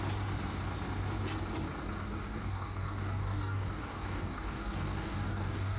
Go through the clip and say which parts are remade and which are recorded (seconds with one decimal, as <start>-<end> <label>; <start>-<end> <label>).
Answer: 0.0-2.1 recorded; 2.1-5.8 remade